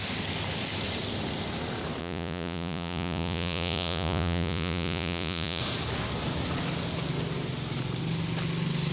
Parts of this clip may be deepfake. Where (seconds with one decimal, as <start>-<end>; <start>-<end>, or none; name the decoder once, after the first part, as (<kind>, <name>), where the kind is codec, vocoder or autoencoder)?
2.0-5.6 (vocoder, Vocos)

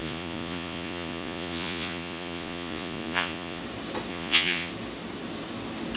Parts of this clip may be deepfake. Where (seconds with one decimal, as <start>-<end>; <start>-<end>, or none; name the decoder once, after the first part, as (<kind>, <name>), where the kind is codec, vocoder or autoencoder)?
0.0-3.6 (vocoder, Vocos); 4.1-4.7

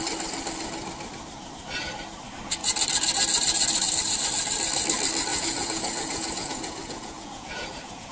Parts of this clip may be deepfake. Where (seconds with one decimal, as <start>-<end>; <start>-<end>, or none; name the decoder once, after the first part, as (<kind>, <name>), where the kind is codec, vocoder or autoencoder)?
5.3-8.1 (vocoder, Vocos)

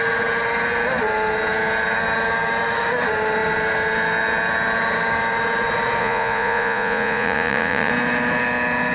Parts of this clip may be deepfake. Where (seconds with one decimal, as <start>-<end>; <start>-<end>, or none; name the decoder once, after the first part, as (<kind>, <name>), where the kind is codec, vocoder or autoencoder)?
6.0-7.9 (vocoder, Vocos)

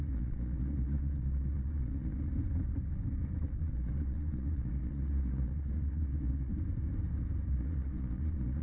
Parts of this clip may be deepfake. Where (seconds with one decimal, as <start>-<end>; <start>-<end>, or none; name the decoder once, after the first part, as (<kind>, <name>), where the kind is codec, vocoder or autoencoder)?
0.0-2.3 (vocoder, Vocos); 3.4-6.5; 7.5-8.6